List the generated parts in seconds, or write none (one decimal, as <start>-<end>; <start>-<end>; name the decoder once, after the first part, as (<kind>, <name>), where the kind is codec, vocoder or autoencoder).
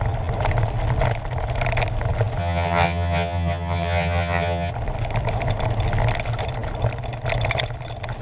2.4-4.7 (vocoder, HiFi-GAN)